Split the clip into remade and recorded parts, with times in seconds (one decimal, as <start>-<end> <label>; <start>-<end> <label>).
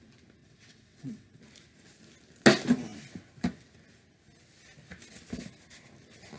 0.0-0.4 recorded; 0.4-1.4 remade; 1.4-6.4 recorded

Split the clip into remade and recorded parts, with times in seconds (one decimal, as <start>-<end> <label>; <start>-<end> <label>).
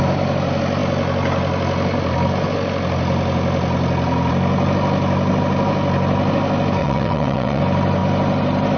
0.0-6.8 recorded; 6.8-7.6 remade; 7.6-8.8 recorded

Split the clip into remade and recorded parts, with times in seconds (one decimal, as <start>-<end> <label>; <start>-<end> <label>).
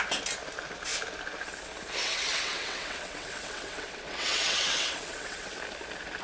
0.0-2.0 recorded; 2.0-5.6 remade; 5.6-6.2 recorded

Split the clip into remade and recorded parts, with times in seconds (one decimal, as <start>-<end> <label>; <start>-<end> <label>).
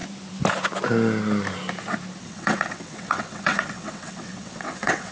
0.0-2.2 recorded; 2.2-5.1 remade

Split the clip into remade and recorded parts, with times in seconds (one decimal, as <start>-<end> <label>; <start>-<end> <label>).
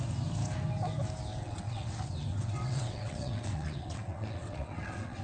0.0-1.3 recorded; 1.3-1.9 remade; 1.9-2.3 recorded; 2.3-5.2 remade